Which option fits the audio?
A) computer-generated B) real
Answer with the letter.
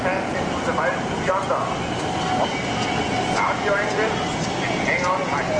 B